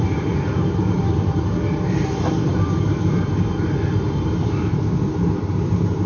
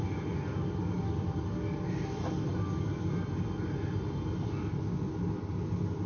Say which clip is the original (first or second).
second